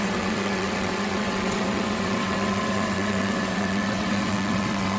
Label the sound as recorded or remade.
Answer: remade